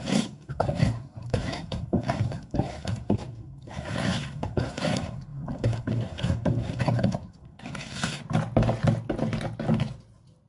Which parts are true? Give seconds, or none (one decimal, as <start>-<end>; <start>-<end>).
8.2-10.5